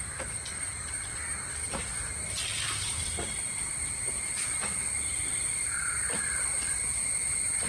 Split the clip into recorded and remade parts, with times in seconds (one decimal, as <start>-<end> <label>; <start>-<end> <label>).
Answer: 0.0-1.1 remade; 1.1-2.3 recorded; 2.3-7.7 remade